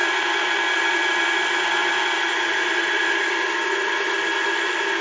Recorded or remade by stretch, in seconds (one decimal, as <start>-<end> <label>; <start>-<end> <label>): 0.0-5.0 recorded